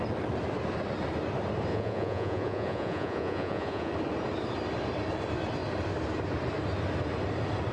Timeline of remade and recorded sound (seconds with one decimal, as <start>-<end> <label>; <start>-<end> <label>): 0.0-1.7 recorded; 1.7-3.9 remade; 3.9-7.7 recorded